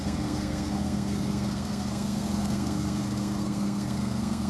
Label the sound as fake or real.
fake